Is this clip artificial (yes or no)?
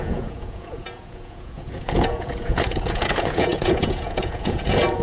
yes